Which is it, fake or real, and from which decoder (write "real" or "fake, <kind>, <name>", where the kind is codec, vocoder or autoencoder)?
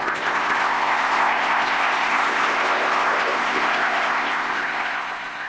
fake, codec, ZipCodec